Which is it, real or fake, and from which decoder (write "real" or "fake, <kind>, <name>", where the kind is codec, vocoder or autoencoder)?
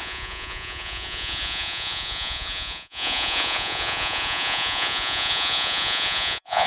fake, vocoder, Vocos